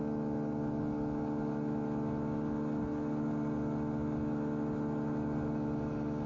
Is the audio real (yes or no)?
yes